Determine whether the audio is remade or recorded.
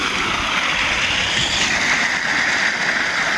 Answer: recorded